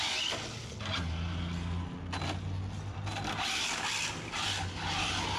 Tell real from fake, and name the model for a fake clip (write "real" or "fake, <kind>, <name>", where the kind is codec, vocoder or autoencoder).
real